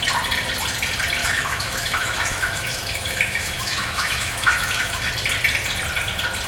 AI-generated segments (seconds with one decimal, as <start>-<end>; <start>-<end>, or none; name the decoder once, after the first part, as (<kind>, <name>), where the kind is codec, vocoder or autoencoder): 1.2-5.1 (autoencoder, DAC-VAE)